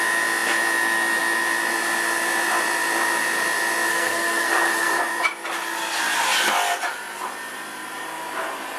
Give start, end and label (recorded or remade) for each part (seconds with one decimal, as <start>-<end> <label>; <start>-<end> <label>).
0.0-3.9 recorded; 3.9-5.1 remade; 5.1-8.8 recorded